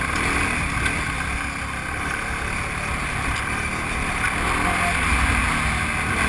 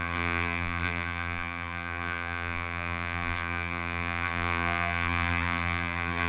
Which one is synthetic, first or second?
second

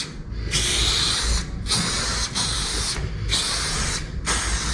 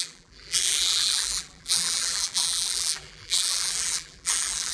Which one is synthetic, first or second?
second